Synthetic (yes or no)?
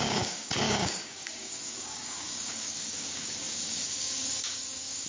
yes